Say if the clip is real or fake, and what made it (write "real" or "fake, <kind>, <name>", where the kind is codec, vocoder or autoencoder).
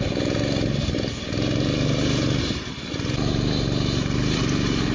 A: real